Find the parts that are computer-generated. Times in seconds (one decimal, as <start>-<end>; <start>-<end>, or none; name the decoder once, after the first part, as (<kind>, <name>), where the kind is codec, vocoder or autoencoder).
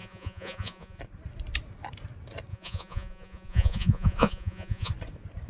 0.0-1.0 (vocoder, Vocos); 2.5-4.9